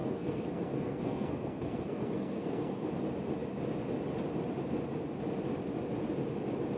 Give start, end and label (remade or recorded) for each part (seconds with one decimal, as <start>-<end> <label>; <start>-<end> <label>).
0.0-2.9 remade; 2.9-6.8 recorded